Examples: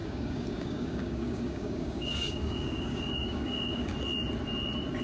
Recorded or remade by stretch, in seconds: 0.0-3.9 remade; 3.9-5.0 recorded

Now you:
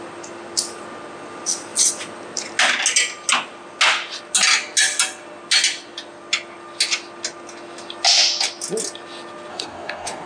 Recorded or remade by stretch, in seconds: 0.0-9.5 recorded; 9.5-10.3 remade

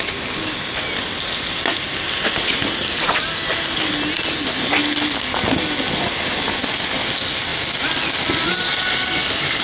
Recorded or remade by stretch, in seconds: 0.0-9.6 recorded

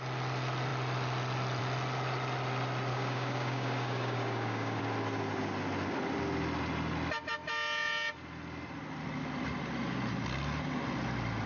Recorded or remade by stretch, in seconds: 0.0-2.9 recorded; 2.9-4.8 remade; 4.8-11.5 recorded

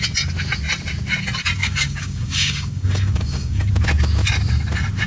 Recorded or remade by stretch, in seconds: 0.0-1.6 recorded; 1.6-3.7 remade; 3.7-5.1 recorded

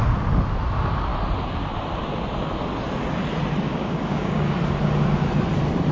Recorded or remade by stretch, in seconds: 0.0-3.7 recorded; 3.7-4.6 remade; 4.6-5.9 recorded